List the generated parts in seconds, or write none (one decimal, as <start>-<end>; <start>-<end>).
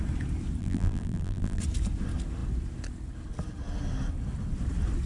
0.6-1.6